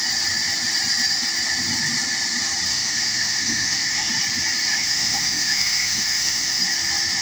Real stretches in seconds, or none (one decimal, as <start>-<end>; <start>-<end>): 0.0-2.7; 4.1-4.7; 6.6-7.2